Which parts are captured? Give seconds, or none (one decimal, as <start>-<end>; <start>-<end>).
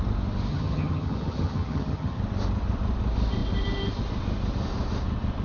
0.0-0.5; 2.2-5.4